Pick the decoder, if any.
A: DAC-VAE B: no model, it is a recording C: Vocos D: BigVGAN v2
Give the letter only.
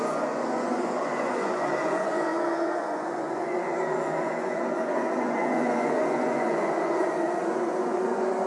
C